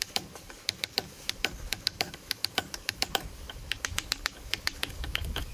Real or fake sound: fake